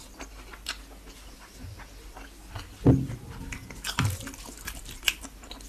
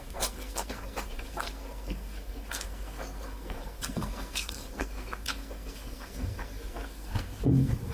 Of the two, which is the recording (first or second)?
first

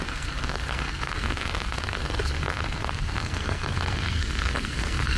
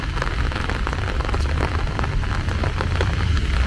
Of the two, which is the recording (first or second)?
second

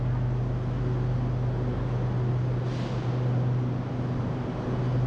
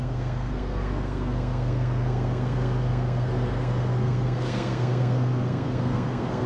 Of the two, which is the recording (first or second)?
first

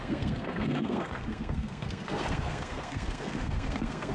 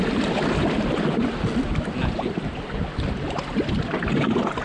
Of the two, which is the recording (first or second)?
second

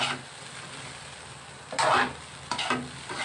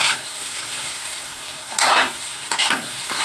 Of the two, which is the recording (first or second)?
first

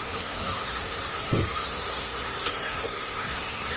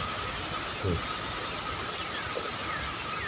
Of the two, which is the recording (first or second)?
second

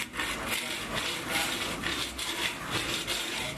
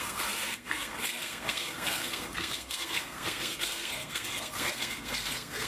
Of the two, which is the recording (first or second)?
first